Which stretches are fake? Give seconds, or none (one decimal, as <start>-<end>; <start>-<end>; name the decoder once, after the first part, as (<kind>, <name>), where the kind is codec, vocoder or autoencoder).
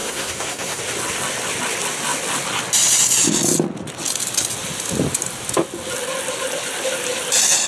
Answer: 0.0-0.8 (codec, SNAC)